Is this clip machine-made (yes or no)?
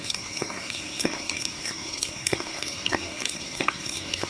yes